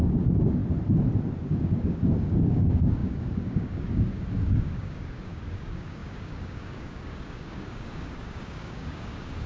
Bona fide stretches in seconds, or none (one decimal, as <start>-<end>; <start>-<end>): 0.6-1.4